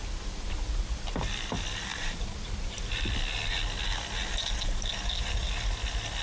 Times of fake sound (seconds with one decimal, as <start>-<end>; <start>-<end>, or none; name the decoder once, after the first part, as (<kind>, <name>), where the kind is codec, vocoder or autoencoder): 1.9-2.9 (vocoder, BigVGAN v2)